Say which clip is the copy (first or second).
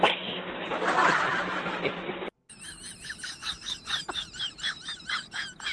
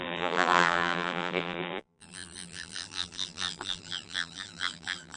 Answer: second